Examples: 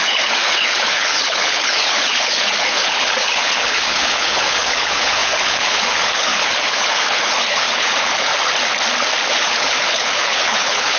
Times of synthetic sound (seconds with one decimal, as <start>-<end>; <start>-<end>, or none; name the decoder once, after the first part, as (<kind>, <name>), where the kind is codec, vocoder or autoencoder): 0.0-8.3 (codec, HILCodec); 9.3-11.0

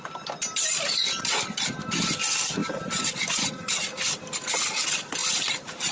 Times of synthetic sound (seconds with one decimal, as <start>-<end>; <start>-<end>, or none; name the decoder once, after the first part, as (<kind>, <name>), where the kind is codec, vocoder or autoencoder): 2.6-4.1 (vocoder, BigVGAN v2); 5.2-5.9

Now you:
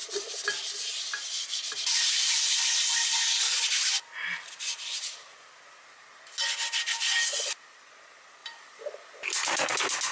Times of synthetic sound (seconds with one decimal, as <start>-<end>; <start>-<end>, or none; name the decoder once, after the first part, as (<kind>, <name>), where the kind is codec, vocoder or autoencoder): 0.0-0.7 (vocoder, BigVGAN v2); 8.4-9.7

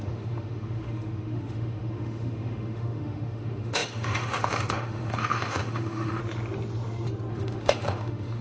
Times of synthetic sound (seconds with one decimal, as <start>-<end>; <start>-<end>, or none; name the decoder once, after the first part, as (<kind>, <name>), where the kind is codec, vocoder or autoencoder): 0.0-6.2 (autoencoder, DAC-VAE); 7.3-8.4

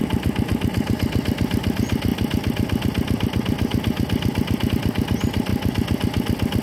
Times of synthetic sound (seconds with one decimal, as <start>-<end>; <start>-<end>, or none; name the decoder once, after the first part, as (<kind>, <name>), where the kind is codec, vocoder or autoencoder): none

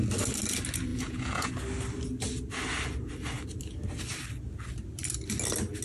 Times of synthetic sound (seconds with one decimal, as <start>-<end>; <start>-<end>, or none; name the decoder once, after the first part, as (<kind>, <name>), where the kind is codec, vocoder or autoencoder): 0.9-1.5 (vocoder, Vocos)

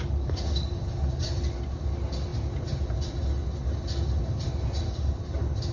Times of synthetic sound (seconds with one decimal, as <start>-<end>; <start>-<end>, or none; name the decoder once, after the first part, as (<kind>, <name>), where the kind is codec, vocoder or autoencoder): none